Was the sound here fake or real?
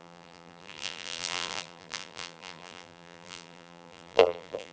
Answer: fake